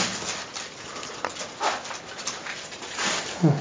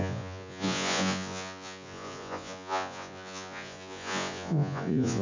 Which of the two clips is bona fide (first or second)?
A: first